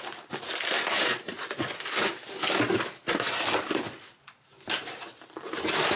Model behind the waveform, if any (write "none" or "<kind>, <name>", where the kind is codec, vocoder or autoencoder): none